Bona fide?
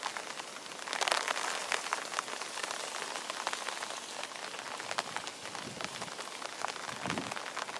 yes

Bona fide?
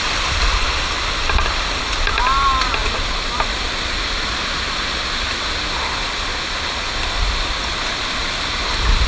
yes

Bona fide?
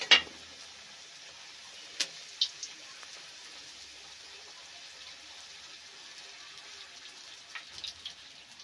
yes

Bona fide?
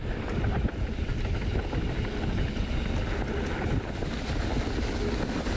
yes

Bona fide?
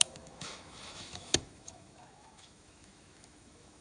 no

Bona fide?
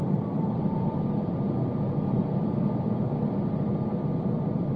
yes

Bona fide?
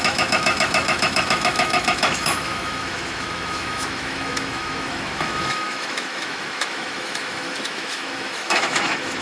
no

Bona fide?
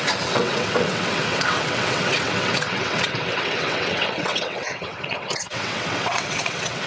no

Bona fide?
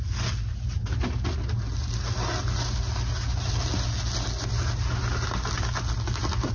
yes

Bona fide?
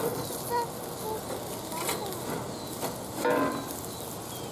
yes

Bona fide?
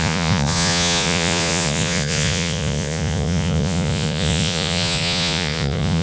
no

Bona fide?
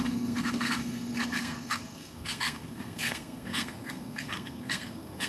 no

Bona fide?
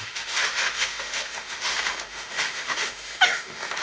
no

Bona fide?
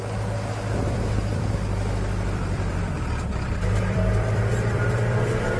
no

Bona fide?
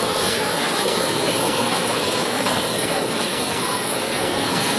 no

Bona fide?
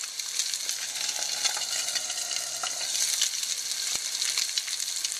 yes